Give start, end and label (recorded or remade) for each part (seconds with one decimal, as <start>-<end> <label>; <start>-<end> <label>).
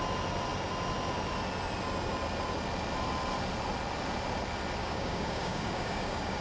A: 0.0-4.8 recorded; 4.8-6.4 remade